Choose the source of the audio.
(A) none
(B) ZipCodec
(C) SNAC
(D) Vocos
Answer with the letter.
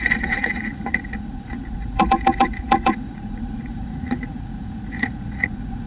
D